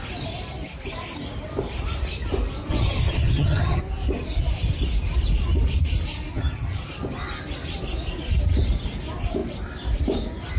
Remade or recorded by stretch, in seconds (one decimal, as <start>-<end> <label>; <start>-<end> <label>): 0.0-2.7 recorded; 2.7-3.8 remade; 3.8-6.3 recorded; 6.3-6.8 remade; 6.8-10.6 recorded